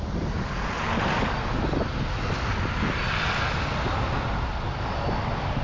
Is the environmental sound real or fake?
real